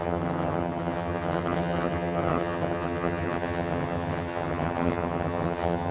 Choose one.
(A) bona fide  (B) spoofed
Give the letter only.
B